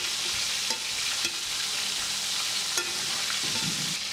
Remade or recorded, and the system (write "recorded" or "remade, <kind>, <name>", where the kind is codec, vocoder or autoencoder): recorded